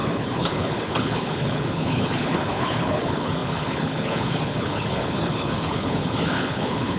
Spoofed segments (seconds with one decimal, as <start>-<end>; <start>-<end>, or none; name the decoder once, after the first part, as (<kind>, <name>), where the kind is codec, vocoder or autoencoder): 0.0-7.0 (codec, HILCodec)